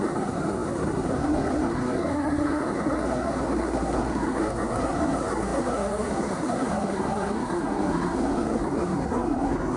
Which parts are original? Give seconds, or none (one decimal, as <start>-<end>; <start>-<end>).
none